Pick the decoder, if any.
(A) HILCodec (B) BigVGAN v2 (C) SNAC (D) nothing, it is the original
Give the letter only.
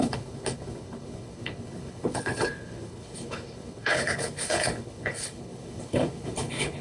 A